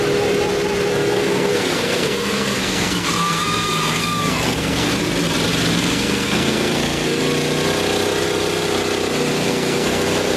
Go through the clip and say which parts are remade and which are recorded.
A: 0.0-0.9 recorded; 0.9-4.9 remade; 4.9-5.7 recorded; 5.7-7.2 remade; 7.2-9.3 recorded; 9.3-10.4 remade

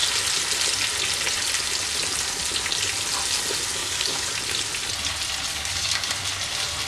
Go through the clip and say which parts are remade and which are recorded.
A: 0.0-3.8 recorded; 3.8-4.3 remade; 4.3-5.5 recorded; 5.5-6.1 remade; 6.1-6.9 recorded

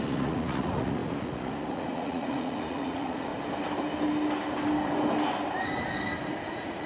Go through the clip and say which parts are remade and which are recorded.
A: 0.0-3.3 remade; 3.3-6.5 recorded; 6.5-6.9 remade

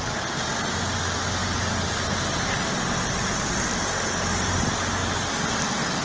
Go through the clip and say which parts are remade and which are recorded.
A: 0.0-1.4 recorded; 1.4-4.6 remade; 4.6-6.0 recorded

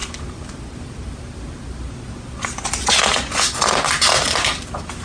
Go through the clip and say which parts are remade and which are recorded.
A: 0.0-5.0 recorded

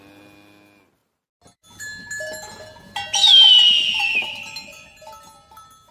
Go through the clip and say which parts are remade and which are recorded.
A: 0.0-5.9 recorded